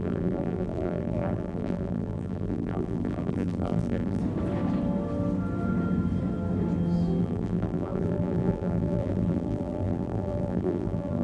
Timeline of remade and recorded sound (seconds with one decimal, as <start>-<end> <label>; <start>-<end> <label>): 0.0-4.2 remade; 4.2-7.2 recorded; 7.2-11.2 remade